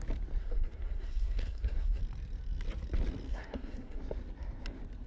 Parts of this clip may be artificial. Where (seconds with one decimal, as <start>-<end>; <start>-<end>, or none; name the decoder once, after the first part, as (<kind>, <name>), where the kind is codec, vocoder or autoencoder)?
0.4-2.0 (codec, SNAC); 3.3-4.0